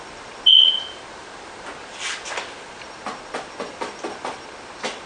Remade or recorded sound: recorded